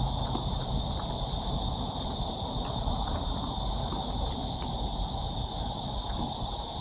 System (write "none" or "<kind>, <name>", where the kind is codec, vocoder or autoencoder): none